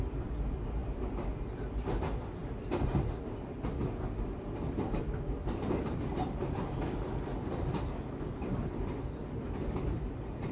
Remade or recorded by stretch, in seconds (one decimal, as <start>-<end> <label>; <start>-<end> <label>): 0.0-2.4 remade; 2.4-5.0 recorded; 5.0-7.3 remade; 7.3-9.2 recorded; 9.2-10.5 remade